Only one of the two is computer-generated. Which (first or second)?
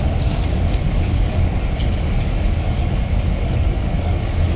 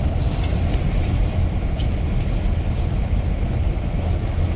first